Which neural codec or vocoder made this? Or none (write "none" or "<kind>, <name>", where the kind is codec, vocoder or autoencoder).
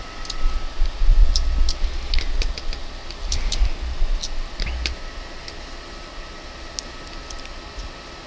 none